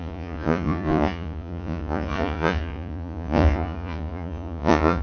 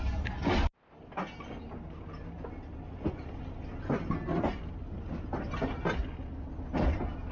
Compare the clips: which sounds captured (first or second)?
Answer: second